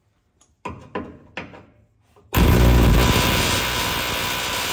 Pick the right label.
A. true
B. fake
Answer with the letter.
A